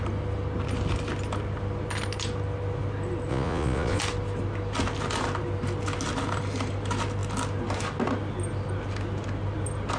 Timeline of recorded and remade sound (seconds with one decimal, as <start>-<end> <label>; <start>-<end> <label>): 0.0-3.3 recorded; 3.3-4.0 remade; 4.0-10.0 recorded